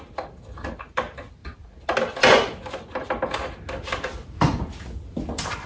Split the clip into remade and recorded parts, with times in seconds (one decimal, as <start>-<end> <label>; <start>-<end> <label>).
0.0-5.7 recorded